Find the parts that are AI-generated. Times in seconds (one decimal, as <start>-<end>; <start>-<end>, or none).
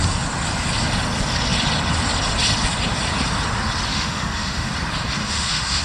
3.9-4.7; 5.2-5.8